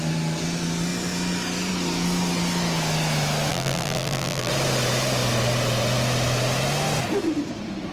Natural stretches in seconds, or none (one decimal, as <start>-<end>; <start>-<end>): 0.0-3.5; 4.5-7.9

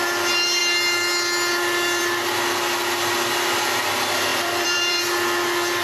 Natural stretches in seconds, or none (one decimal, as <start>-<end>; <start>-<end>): 0.0-4.3; 5.0-5.8

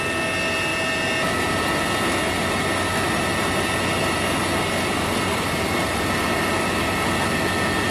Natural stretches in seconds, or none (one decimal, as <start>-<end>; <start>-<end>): 0.0-5.3; 5.8-7.9